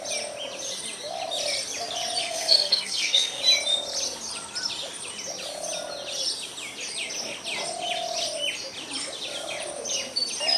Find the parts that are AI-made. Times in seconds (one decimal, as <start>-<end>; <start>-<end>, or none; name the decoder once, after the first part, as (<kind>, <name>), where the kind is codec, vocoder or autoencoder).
2.2-3.4 (codec, SNAC)